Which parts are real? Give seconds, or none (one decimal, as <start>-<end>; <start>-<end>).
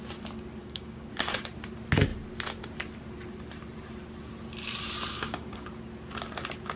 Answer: 0.0-0.6; 1.1-5.1; 5.7-6.8